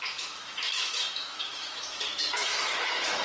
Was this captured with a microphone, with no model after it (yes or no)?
no